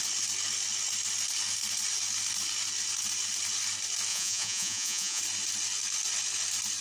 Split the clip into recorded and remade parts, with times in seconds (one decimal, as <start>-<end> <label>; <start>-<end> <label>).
0.0-4.1 recorded; 4.1-5.2 remade; 5.2-6.8 recorded